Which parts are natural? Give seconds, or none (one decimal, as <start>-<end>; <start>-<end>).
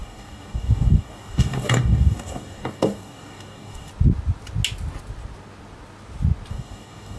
3.9-6.5